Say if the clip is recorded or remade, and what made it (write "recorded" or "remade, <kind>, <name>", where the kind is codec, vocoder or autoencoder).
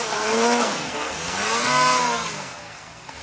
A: remade, codec, SNAC